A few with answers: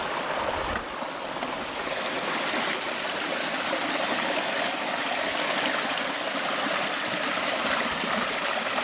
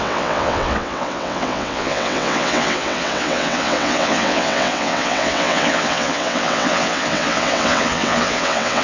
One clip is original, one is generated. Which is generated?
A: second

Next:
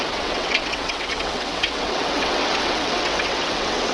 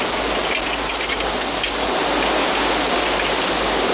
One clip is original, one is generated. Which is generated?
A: first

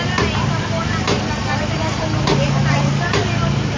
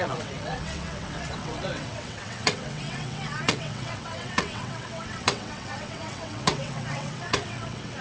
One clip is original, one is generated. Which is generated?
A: second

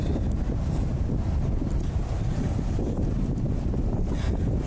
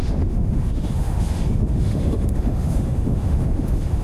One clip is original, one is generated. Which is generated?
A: second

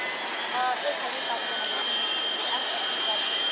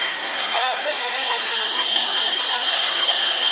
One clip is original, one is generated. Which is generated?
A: second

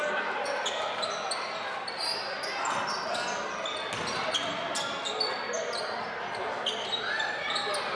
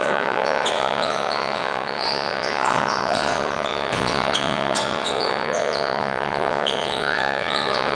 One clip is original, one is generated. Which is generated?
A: second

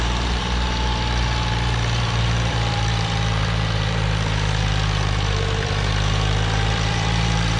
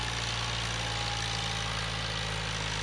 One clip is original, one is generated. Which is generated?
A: first